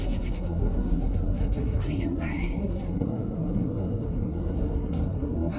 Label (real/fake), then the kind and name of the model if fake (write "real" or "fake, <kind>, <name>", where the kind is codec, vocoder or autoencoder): fake, codec, SNAC